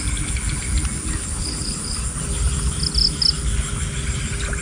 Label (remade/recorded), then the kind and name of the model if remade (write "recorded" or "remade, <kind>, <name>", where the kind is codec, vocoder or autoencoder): recorded